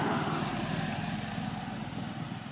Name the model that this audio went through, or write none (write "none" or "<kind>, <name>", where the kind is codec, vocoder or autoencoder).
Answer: none